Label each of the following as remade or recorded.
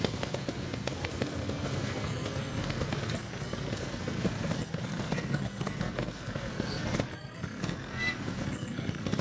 remade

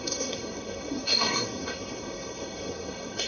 remade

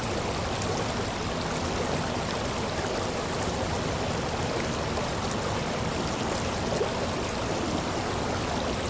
recorded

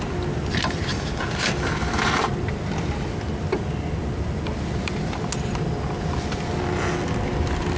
recorded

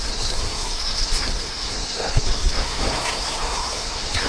remade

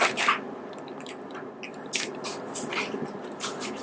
recorded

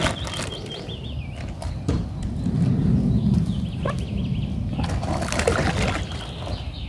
recorded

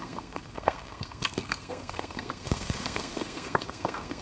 remade